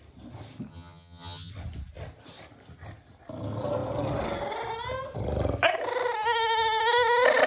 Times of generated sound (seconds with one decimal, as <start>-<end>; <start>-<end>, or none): 0.7-1.5